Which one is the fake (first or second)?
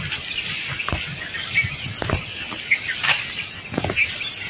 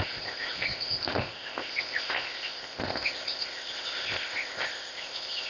second